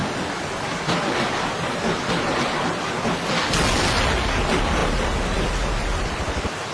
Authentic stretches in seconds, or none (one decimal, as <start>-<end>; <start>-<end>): 0.0-6.7